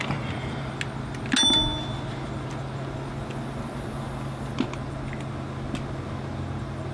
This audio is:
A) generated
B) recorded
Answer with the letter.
B